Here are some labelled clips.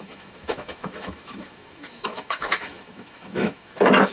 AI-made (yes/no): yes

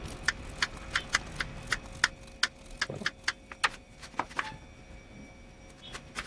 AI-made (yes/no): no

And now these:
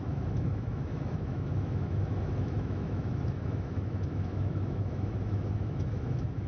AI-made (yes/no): yes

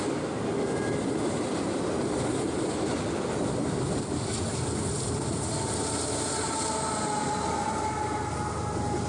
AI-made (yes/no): no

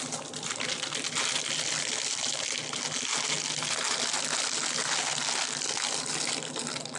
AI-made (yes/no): no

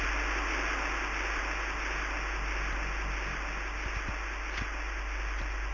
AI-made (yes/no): no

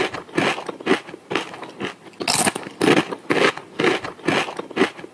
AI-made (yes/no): no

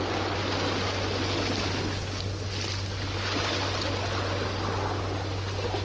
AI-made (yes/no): no